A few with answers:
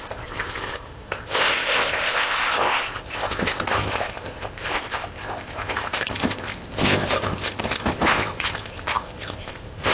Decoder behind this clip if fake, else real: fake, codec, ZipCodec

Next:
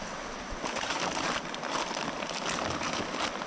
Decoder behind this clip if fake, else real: real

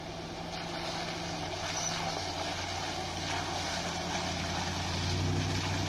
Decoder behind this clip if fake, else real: real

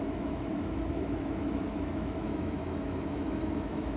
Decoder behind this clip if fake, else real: fake, autoencoder, DAC-VAE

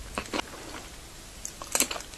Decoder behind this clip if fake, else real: real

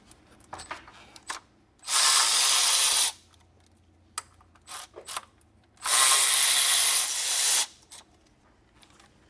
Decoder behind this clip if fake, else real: real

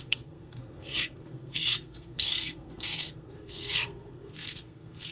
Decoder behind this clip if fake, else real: fake, codec, SNAC